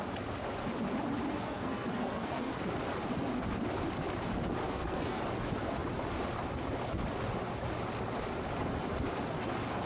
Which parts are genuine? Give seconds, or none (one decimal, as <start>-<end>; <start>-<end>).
0.0-1.3; 2.5-4.6; 5.2-9.9

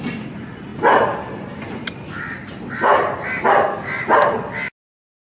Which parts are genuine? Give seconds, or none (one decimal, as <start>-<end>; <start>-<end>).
0.0-5.2

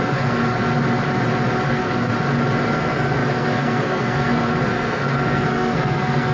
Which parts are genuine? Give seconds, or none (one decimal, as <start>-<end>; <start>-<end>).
0.4-1.7; 2.1-2.6

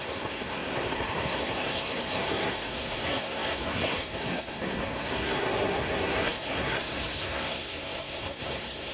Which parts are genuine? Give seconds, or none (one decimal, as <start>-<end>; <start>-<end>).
none

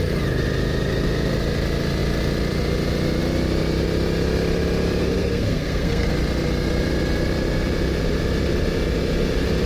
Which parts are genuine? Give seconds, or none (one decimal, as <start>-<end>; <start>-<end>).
0.0-5.0; 6.1-9.7

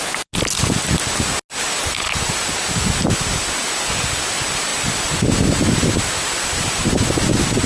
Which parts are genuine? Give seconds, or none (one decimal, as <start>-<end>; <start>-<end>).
0.0-7.7

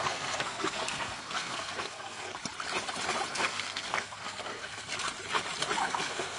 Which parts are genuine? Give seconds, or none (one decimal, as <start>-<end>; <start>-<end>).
2.4-3.3; 4.9-5.8